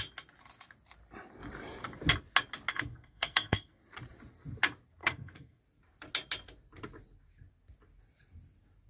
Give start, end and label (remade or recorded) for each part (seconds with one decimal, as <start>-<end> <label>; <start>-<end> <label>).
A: 0.0-2.7 recorded; 2.7-3.8 remade; 3.8-5.0 recorded; 5.0-5.6 remade; 5.6-8.9 recorded